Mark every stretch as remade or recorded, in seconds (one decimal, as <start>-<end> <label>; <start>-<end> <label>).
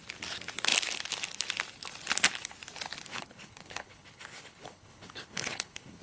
0.0-3.1 recorded; 3.1-6.0 remade